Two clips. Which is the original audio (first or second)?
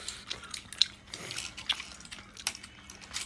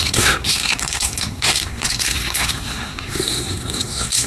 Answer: first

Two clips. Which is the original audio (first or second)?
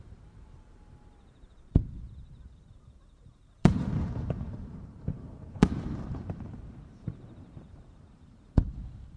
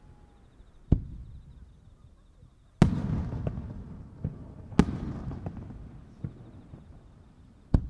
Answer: second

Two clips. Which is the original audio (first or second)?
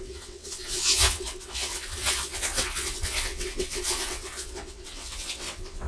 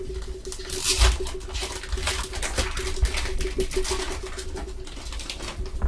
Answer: second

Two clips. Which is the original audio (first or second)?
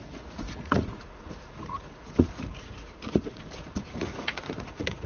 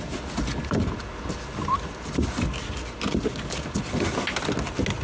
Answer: second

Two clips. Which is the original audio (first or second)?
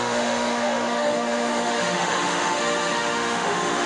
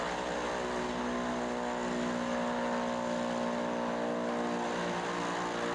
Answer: second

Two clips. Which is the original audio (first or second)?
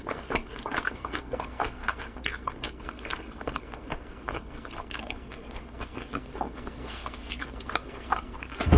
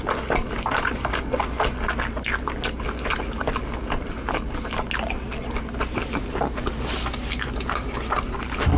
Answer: second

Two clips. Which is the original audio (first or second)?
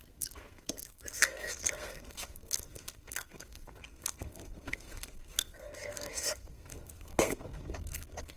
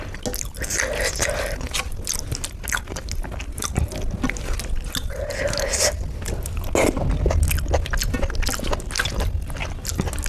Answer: second